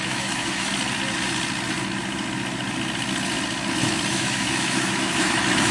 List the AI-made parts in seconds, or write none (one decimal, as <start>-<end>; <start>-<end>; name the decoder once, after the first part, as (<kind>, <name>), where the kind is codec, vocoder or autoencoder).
0.0-0.7 (autoencoder, DAC-VAE); 4.1-5.7